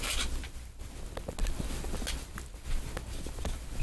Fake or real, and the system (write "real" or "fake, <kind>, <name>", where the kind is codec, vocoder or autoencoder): real